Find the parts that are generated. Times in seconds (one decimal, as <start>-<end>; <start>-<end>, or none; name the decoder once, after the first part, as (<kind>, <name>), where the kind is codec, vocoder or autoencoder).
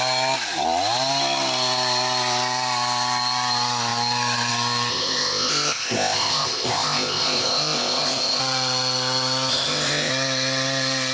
4.9-8.4 (codec, ZipCodec); 9.5-10.1